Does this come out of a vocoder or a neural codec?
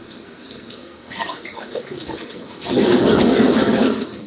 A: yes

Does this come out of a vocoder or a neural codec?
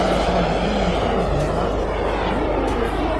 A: no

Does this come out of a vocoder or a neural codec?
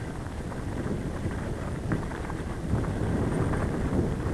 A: yes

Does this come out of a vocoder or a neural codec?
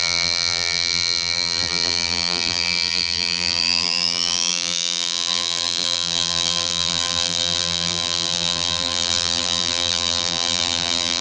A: yes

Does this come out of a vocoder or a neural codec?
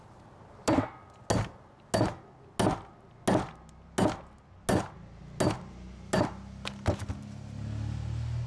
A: no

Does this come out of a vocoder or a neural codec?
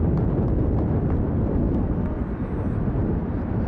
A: no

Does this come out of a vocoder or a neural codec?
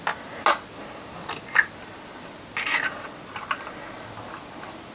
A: no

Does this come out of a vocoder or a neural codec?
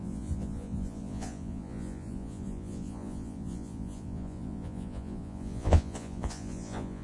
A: yes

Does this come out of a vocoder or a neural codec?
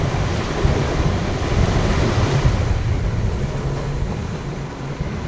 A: no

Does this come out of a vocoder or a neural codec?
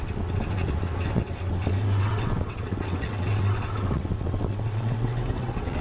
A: yes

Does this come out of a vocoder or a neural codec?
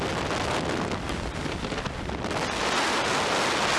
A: no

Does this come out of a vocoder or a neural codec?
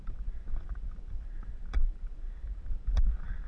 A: yes